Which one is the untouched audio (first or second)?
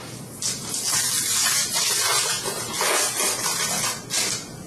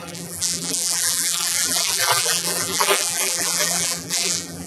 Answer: first